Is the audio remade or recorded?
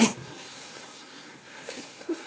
remade